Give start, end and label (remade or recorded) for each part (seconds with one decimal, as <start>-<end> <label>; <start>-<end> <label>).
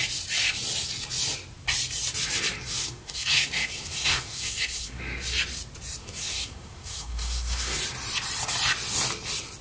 0.0-2.8 recorded; 2.8-5.0 remade; 5.0-6.0 recorded; 6.0-7.8 remade; 7.8-9.6 recorded